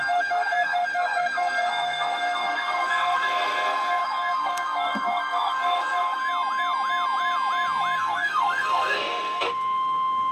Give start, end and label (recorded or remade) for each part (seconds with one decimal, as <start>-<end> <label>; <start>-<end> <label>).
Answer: 0.0-6.2 remade; 6.2-8.0 recorded; 8.0-10.3 remade